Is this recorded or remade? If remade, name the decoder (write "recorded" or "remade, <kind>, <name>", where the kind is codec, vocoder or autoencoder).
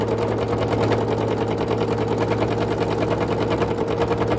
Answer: recorded